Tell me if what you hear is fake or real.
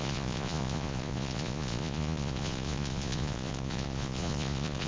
fake